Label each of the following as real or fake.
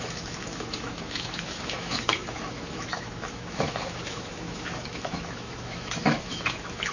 fake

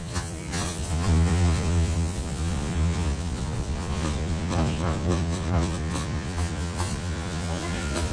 fake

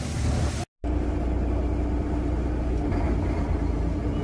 real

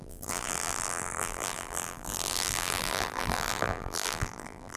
fake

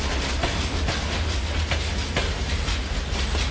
real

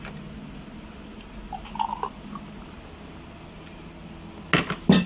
real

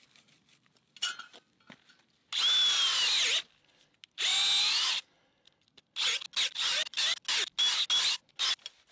real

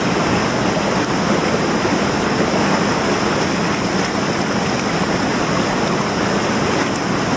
real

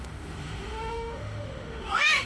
fake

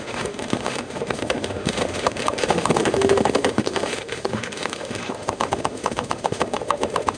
fake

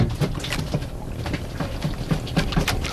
real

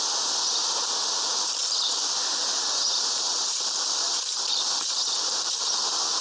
real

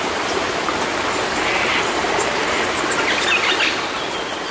real